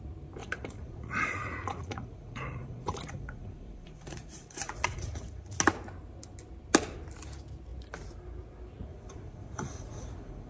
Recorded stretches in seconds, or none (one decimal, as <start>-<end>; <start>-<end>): 0.0-0.4; 5.6-8.9